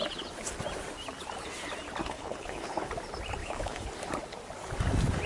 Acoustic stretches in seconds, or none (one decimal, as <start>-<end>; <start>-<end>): 0.0-2.0; 2.9-3.4; 3.9-5.3